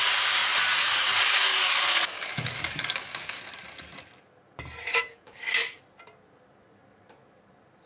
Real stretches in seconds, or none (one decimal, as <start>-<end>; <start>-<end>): 0.0-1.5; 3.4-4.9; 5.8-7.9